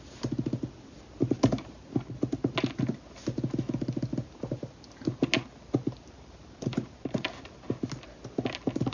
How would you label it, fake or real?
real